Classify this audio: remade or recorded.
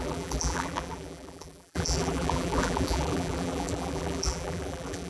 remade